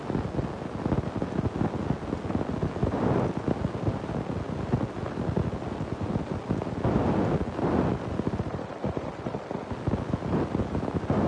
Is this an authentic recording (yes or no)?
yes